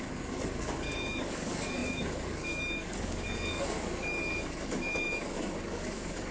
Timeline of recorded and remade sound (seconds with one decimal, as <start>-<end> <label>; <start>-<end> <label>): 0.0-6.3 remade